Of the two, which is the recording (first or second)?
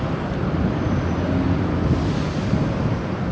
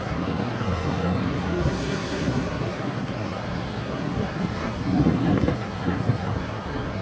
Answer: first